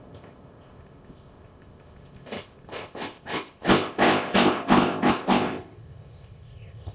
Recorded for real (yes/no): no